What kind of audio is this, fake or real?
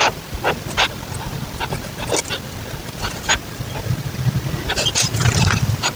real